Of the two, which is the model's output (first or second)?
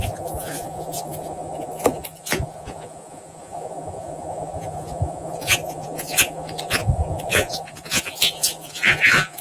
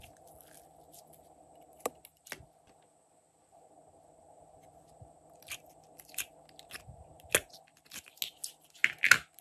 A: first